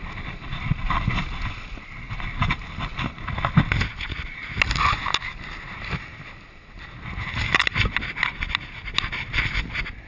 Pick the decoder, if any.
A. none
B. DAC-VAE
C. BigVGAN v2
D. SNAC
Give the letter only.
A